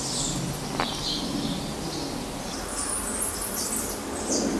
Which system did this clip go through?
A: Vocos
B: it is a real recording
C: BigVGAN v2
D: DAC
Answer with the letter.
B